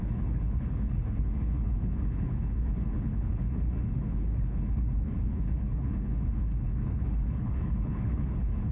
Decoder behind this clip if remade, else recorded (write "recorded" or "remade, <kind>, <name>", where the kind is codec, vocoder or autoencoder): remade, codec, HILCodec